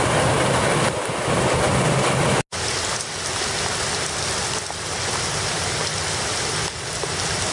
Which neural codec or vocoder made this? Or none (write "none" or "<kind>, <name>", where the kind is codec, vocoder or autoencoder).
none